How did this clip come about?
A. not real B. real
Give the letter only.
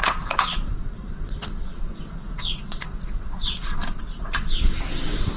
A